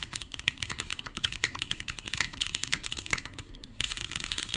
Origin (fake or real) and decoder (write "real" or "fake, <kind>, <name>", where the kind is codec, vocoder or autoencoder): fake, codec, SNAC